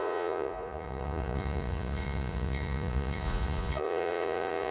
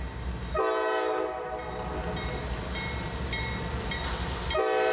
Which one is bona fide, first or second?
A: second